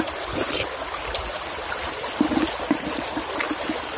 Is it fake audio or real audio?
real